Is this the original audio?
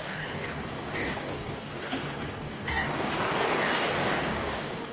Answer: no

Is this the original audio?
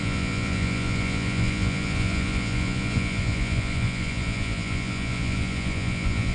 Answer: no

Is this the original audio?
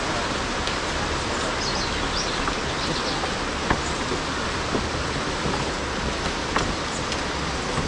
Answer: yes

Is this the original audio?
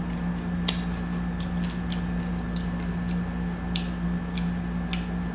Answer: yes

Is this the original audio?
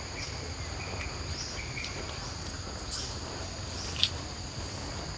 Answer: yes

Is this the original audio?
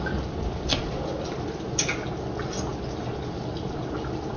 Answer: yes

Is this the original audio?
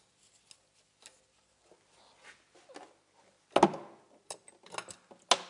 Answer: yes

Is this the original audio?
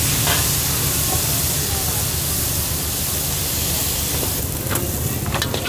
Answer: yes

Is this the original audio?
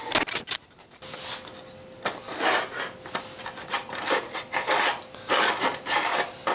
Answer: yes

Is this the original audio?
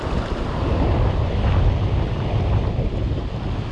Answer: yes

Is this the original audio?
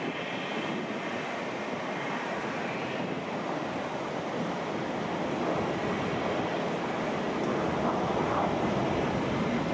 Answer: yes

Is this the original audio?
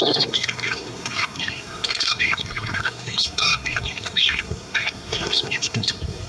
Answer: no